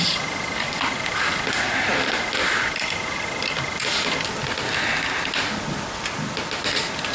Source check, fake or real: real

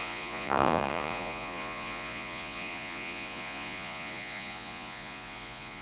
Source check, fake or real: fake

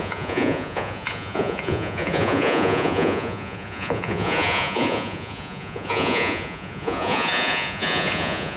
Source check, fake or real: fake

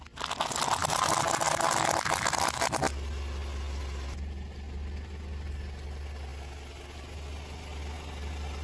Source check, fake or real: real